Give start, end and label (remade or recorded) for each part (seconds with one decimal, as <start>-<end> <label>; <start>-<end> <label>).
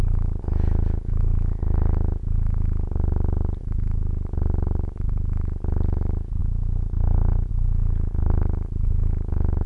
0.0-9.7 recorded